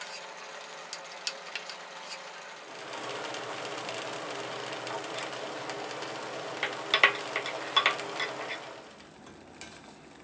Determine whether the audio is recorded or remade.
recorded